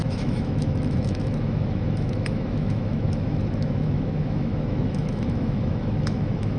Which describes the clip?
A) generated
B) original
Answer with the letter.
A